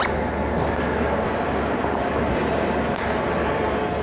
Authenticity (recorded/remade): recorded